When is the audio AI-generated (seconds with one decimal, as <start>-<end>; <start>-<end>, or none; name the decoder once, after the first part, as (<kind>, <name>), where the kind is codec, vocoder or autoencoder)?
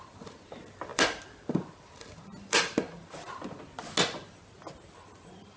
0.9-3.6 (vocoder, BigVGAN v2)